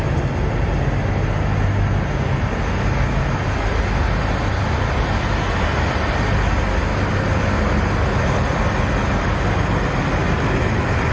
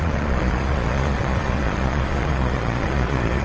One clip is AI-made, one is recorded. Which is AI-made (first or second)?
second